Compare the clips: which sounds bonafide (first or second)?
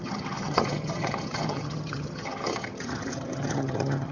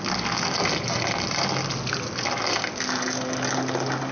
second